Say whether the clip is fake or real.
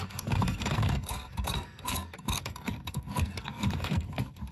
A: fake